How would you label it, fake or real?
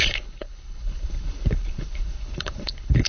fake